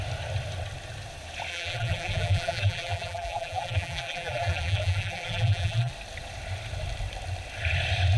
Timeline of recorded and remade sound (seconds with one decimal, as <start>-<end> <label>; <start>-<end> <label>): 0.0-1.5 recorded; 1.5-5.9 remade; 5.9-8.2 recorded